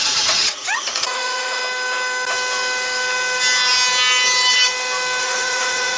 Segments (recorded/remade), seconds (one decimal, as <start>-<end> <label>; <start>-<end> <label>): 0.0-1.6 remade; 1.6-5.2 recorded; 5.2-6.0 remade